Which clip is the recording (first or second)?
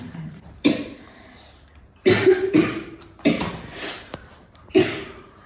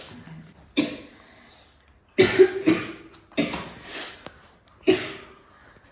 second